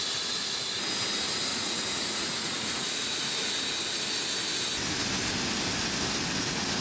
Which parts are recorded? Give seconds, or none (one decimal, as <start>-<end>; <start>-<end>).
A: 0.0-1.5; 3.3-6.8